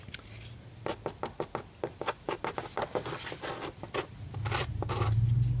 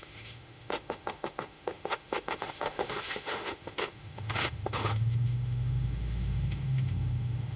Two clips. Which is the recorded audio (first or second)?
first